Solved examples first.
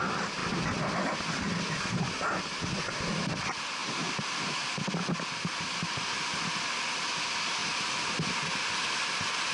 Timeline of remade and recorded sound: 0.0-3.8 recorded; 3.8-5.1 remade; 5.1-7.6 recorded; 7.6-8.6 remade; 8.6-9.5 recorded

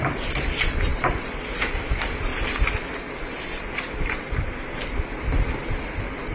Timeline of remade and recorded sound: 0.0-0.9 recorded; 0.9-1.9 remade; 1.9-6.3 recorded